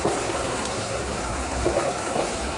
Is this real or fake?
fake